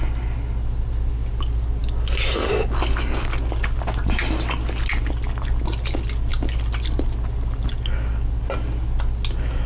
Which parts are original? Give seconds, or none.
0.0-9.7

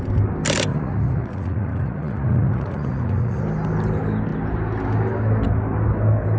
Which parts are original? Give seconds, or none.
0.0-0.7; 3.4-6.4

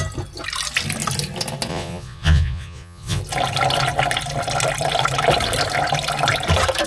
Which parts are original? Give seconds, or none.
0.0-1.7; 3.2-6.9

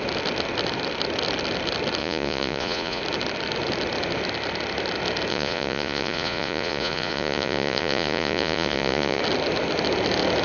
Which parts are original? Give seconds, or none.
0.0-2.0; 3.0-5.3; 9.2-10.4

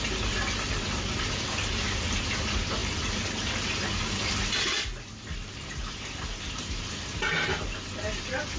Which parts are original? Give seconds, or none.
0.0-8.6

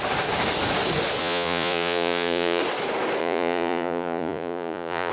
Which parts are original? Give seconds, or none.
0.0-1.2; 2.6-3.2